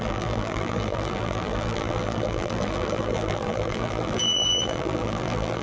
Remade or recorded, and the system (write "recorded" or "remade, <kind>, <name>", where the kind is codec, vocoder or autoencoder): remade, vocoder, BigVGAN v2